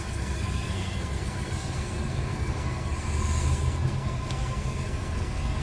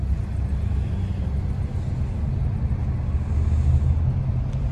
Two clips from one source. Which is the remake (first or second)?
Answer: first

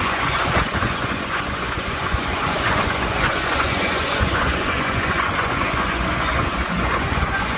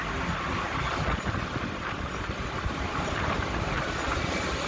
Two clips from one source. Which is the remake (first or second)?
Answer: first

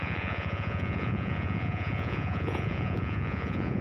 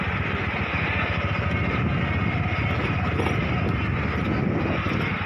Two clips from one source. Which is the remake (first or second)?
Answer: first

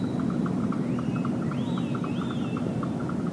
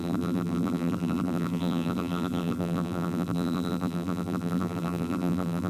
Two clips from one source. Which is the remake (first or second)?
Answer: second